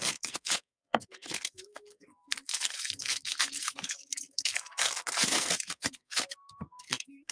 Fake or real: fake